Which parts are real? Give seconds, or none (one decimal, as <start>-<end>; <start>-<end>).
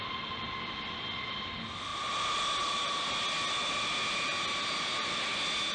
0.0-5.7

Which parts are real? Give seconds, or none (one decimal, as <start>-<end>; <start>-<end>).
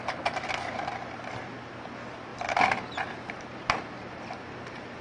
0.0-5.0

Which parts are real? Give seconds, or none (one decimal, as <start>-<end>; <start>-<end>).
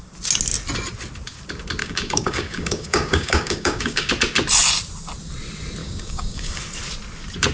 0.0-1.8; 4.1-5.8; 6.6-7.5